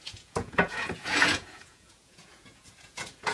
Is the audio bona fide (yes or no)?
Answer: no